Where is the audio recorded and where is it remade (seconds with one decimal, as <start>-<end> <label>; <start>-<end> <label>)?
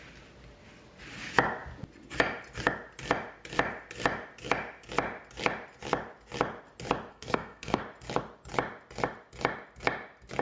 0.0-7.1 recorded; 7.1-7.8 remade; 7.8-10.4 recorded